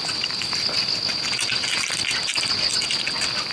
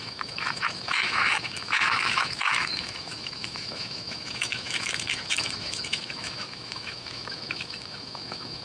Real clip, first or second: first